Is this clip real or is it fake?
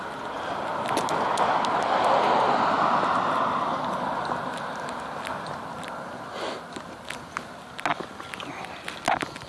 real